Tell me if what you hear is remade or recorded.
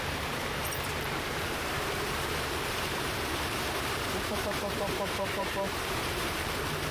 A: remade